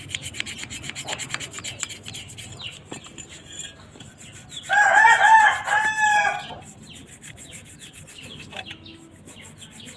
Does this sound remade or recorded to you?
recorded